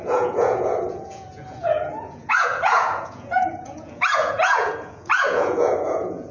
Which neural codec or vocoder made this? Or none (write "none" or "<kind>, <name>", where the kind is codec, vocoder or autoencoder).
vocoder, Vocos